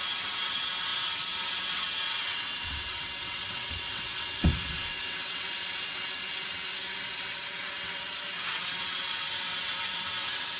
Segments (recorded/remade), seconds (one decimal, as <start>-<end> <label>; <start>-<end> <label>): 0.0-10.6 remade